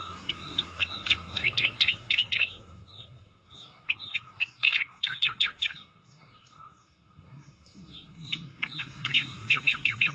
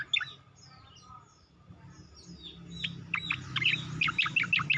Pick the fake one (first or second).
first